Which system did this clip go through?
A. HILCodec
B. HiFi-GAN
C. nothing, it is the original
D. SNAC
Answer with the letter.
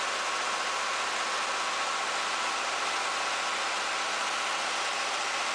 C